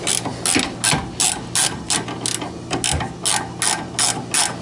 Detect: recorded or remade recorded